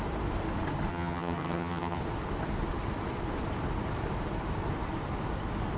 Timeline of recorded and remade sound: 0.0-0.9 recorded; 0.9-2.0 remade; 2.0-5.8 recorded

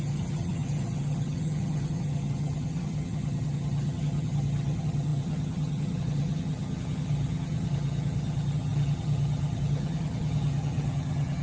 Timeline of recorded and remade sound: 0.0-11.4 remade